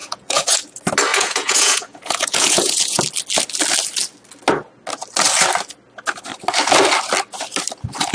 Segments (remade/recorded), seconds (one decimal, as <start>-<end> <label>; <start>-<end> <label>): 0.0-0.6 remade; 0.6-1.1 recorded; 1.1-3.0 remade; 3.0-8.1 recorded